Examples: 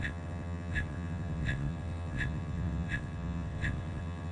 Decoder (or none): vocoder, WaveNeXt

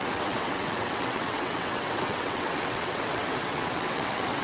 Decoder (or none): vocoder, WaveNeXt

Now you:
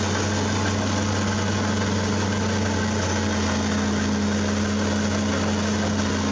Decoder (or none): none